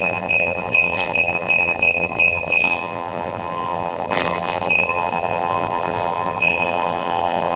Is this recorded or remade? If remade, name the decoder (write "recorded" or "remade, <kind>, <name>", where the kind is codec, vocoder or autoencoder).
remade, vocoder, BigVGAN v2